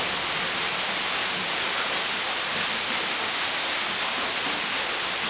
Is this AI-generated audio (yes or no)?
no